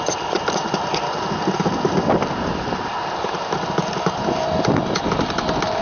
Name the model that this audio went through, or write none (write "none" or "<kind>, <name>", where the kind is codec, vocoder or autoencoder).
none